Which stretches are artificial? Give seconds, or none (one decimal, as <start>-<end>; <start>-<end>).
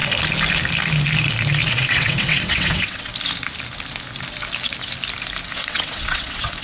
1.7-3.1; 5.5-6.6